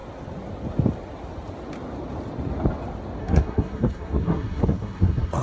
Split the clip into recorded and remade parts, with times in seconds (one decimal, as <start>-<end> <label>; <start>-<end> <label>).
0.0-3.2 recorded; 3.2-5.4 remade